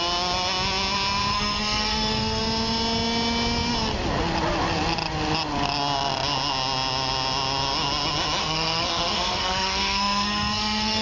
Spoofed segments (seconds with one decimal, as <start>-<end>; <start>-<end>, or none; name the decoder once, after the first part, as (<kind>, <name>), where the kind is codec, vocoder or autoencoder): 1.3-2.4 (codec, SNAC); 8.4-11.0